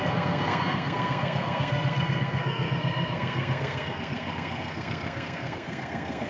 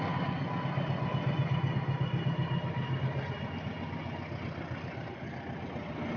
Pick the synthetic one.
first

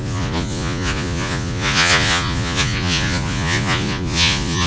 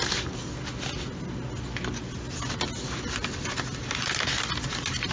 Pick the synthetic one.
first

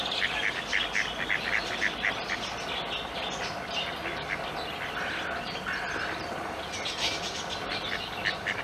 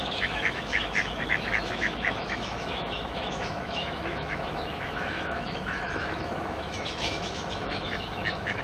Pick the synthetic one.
second